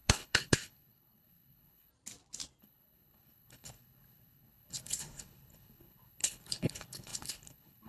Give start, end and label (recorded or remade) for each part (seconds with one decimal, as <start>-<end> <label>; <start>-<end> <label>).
0.0-1.9 remade; 1.9-2.6 recorded; 2.6-7.9 remade